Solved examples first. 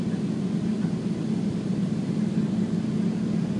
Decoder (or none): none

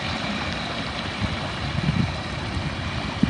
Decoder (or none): none